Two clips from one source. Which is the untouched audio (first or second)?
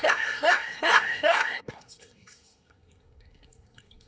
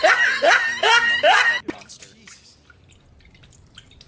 second